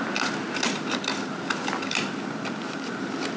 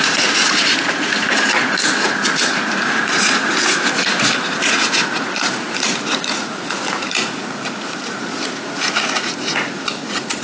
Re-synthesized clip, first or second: second